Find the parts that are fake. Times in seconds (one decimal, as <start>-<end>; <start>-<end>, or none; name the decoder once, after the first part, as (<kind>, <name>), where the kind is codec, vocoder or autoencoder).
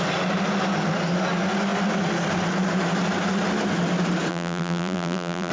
4.3-5.5 (vocoder, BigVGAN v2)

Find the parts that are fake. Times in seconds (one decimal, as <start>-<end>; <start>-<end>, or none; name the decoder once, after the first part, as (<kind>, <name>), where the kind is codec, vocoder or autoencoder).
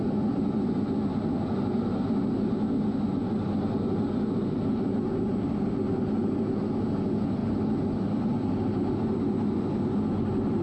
none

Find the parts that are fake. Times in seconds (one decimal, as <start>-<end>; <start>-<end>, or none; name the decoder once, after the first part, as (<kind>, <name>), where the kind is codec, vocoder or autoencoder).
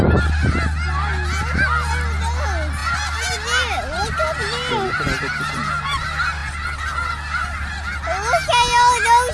none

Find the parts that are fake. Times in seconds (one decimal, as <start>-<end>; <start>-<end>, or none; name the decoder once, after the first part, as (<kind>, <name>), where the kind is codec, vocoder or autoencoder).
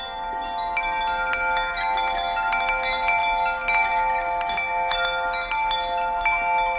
none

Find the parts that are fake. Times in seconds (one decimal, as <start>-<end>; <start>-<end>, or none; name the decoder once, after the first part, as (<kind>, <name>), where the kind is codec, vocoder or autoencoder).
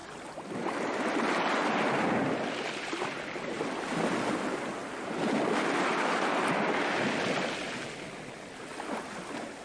none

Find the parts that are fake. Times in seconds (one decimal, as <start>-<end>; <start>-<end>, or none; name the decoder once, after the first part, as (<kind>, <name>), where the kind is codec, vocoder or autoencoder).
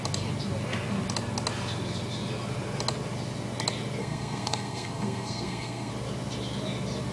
4.0-5.9 (codec, SNAC)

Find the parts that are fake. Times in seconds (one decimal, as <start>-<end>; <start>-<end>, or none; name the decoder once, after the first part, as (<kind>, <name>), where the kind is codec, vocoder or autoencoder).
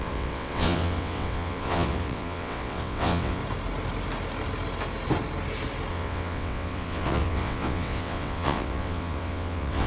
0.0-3.4 (vocoder, WaveNeXt); 5.9-9.9